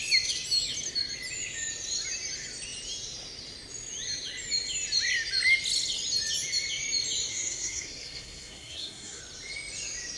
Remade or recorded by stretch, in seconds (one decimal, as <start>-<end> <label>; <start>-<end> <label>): 0.0-7.3 recorded; 7.3-9.2 remade; 9.2-10.2 recorded